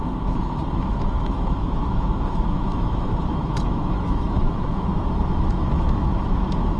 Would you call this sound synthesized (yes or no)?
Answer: yes